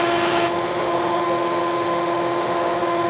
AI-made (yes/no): yes